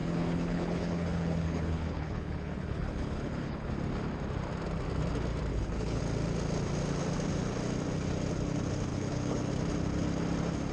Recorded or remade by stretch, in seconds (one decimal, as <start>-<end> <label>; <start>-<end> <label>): 0.0-3.7 remade; 3.7-5.5 recorded; 5.5-6.0 remade; 6.0-8.9 recorded; 8.9-9.5 remade; 9.5-10.7 recorded